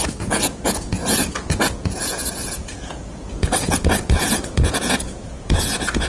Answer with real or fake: fake